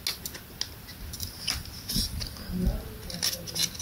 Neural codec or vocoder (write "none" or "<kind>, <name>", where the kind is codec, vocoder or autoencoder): none